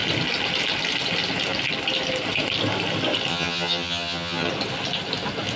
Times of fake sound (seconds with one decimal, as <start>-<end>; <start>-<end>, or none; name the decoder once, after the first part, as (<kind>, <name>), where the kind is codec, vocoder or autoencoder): 3.3-4.5 (vocoder, HiFi-GAN)